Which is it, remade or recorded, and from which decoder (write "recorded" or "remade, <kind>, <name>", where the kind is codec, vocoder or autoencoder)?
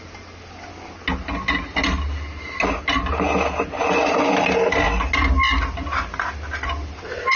recorded